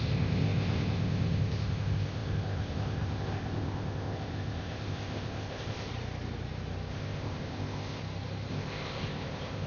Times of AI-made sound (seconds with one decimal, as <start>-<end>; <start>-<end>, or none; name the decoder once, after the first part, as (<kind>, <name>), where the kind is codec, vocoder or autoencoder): 0.0-5.9 (codec, ZipCodec); 6.9-8.0; 8.5-9.7